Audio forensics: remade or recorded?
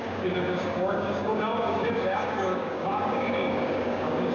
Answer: remade